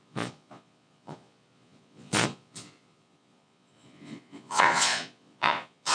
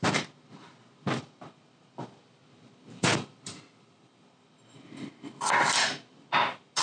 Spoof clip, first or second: first